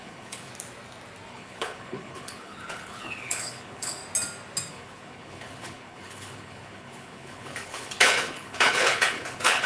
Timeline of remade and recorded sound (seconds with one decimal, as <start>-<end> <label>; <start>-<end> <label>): 0.0-0.5 remade; 0.5-1.3 recorded; 1.3-4.0 remade; 4.0-4.7 recorded; 4.7-9.7 remade